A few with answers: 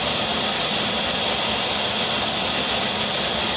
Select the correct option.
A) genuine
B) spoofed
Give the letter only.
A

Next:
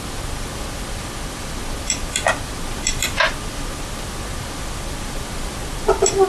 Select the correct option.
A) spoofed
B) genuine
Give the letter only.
B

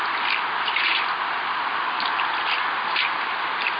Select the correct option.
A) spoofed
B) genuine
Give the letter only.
B